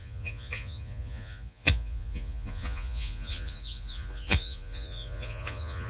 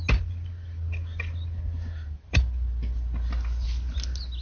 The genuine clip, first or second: second